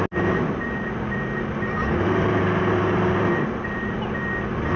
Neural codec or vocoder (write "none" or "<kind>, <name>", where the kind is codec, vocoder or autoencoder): none